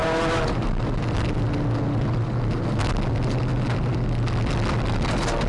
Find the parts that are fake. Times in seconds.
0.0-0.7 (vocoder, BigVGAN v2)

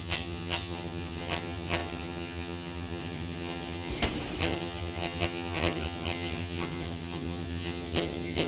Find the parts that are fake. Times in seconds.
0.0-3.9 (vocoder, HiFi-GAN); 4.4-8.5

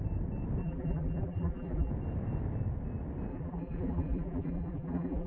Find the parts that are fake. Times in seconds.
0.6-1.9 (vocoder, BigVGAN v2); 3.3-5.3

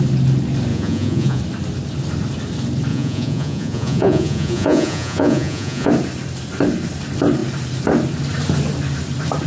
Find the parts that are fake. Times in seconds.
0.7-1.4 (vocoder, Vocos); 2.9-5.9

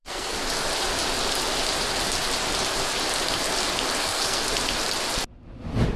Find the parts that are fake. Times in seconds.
0.0-0.4 (codec, SNAC); 4.0-4.4